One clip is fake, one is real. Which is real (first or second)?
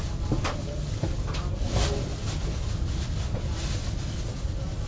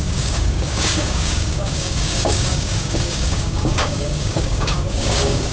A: first